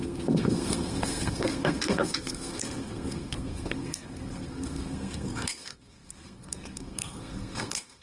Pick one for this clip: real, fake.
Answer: fake